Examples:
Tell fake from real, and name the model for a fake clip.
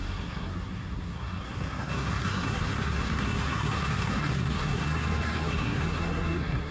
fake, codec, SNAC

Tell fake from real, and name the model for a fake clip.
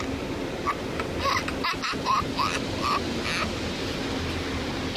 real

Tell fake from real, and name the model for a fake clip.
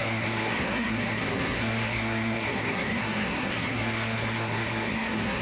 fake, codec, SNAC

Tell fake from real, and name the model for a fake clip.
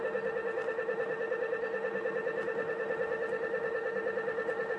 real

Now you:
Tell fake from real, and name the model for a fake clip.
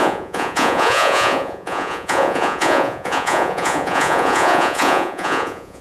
fake, vocoder, Vocos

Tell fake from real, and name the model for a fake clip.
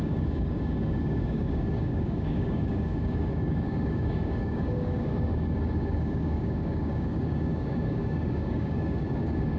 fake, codec, DAC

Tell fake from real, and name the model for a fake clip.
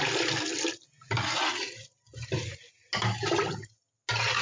real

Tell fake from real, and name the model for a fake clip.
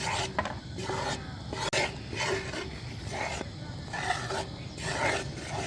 real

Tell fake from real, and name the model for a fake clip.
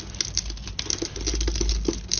real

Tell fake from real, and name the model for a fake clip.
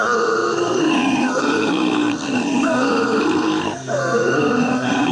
fake, codec, SNAC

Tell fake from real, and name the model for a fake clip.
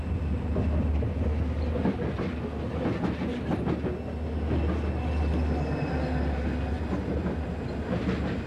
real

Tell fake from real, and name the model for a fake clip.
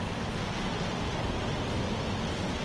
real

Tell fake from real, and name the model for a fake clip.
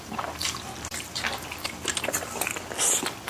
real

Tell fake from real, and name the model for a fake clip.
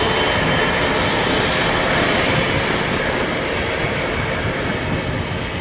real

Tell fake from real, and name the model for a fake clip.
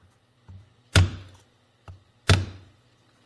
fake, vocoder, BigVGAN v2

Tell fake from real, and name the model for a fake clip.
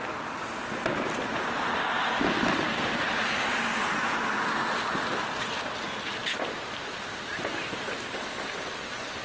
real